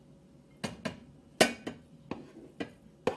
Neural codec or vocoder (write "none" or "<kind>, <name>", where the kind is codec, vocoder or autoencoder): none